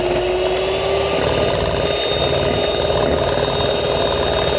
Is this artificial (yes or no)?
no